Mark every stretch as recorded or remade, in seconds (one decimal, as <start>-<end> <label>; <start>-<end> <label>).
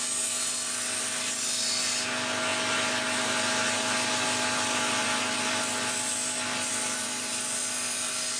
0.0-8.4 recorded